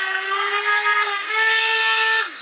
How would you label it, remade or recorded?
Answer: remade